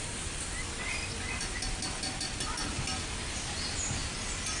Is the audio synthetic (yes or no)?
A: no